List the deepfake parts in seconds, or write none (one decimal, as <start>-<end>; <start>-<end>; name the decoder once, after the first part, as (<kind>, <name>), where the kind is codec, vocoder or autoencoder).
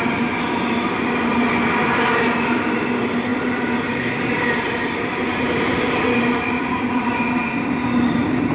none